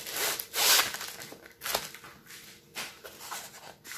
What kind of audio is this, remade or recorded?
recorded